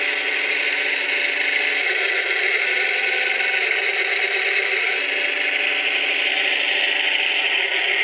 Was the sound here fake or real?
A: real